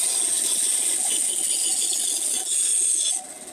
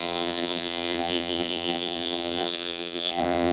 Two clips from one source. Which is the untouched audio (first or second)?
first